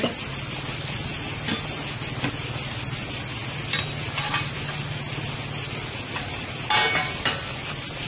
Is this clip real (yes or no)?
yes